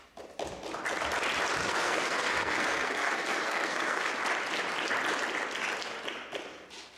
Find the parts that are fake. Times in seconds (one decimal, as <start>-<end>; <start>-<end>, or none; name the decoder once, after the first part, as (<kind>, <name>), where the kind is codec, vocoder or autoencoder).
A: 1.6-4.1 (codec, SNAC)